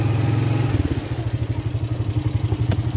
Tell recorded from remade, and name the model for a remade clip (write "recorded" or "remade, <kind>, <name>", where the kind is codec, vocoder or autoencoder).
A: recorded